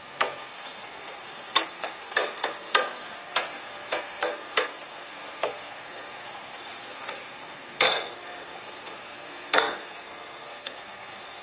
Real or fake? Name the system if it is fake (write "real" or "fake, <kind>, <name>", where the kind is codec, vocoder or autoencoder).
fake, codec, SNAC